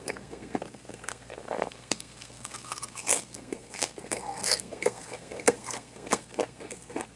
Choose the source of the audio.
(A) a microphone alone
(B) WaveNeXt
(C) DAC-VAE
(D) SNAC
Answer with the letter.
D